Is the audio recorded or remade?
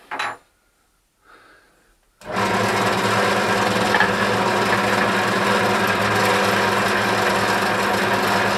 recorded